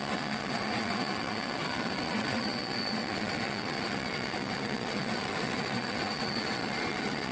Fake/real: fake